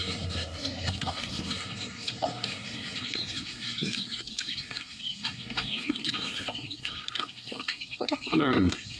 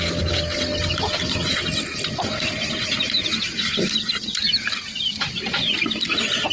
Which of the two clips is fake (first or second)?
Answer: first